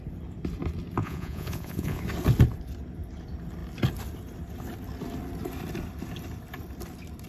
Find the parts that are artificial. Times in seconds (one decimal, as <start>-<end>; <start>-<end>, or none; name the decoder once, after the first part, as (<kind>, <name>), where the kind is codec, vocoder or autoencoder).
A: 1.0-2.0 (vocoder, Vocos)

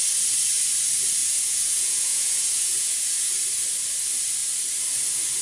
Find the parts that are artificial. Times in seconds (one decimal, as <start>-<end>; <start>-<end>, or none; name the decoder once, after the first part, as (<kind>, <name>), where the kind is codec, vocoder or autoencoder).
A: 1.2-3.3 (vocoder, Vocos)

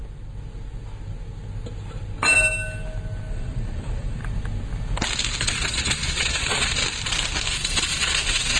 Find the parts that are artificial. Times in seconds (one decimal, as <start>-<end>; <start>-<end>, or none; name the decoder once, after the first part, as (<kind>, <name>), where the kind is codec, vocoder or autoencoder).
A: 3.3-4.2 (vocoder, Vocos); 5.4-6.8; 7.5-8.6

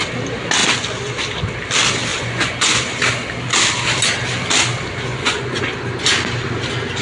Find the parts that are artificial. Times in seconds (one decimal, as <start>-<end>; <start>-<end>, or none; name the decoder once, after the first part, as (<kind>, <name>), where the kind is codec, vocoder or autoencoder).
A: 2.1-2.8 (vocoder, Vocos); 5.1-5.6

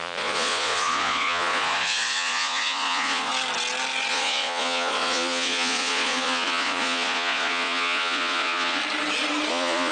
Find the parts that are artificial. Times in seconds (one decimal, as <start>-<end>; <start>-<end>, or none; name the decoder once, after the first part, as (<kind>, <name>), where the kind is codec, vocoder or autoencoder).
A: 0.0-3.3 (vocoder, Vocos); 4.1-8.8; 9.5-9.9

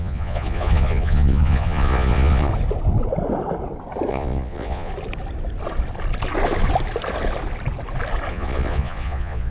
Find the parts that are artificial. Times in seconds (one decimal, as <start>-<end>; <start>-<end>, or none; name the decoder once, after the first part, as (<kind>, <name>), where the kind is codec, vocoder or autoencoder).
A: 0.0-2.5 (vocoder, Vocos); 4.1-4.9; 8.3-9.5

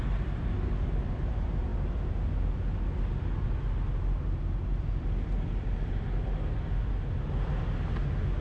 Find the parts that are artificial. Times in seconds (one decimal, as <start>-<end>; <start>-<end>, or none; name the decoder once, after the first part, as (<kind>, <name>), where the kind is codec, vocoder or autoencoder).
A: none